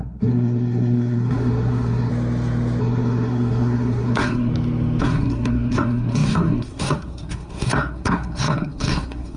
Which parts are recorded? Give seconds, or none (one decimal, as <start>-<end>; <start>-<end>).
2.1-2.8; 4.5-5.0